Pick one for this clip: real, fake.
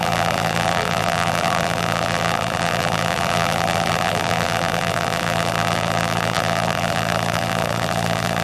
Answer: fake